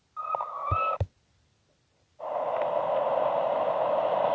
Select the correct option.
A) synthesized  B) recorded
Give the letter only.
B